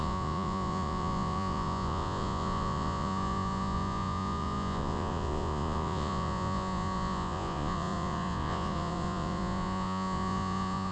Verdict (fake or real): fake